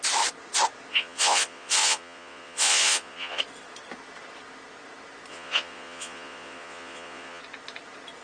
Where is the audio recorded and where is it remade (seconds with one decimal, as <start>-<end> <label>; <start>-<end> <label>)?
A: 0.0-0.9 recorded; 0.9-3.4 remade; 3.4-5.3 recorded; 5.3-7.4 remade; 7.4-8.2 recorded